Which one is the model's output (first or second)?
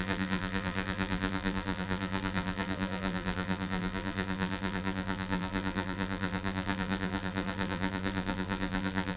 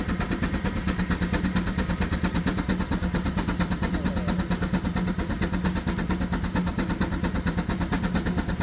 first